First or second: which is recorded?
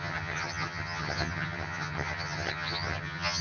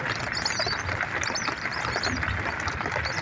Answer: second